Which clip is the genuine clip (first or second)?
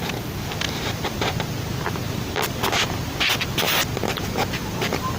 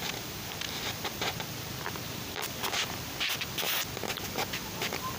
first